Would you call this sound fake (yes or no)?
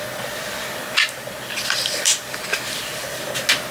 no